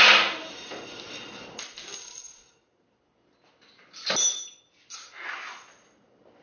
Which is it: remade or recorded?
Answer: recorded